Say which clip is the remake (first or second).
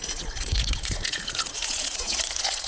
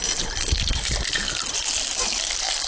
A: first